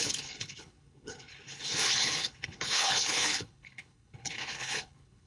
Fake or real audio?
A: fake